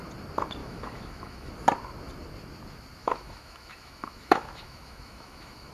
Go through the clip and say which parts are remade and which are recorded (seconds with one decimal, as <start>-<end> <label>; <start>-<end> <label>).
0.0-0.6 recorded; 0.6-1.5 remade; 1.5-3.0 recorded; 3.0-5.7 remade